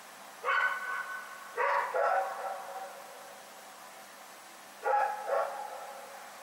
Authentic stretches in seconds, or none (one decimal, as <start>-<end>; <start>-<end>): 0.0-6.4